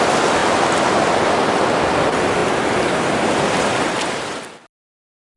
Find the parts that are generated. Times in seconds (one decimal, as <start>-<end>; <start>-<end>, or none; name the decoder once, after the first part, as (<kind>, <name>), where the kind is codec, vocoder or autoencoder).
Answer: 2.4-4.4 (vocoder, BigVGAN v2)